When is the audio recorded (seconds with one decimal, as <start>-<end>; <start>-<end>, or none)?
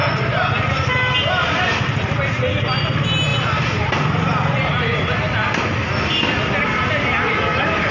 0.0-7.9